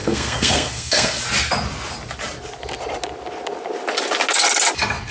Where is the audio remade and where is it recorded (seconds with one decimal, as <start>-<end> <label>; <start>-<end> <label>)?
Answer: 0.0-1.2 remade; 1.2-5.1 recorded